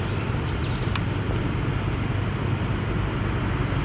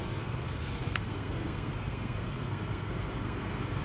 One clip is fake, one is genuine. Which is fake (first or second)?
second